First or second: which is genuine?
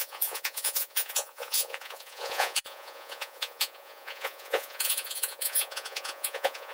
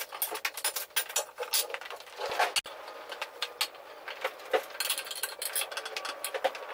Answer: second